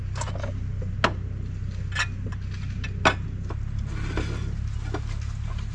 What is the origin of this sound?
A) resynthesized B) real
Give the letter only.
B